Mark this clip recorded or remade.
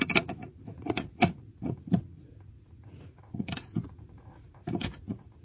remade